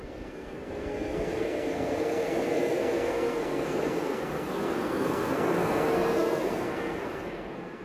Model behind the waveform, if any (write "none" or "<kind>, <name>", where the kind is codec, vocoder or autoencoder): codec, SNAC